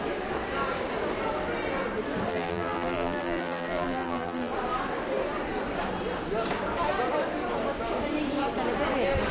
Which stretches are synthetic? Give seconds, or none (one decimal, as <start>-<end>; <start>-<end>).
2.3-4.5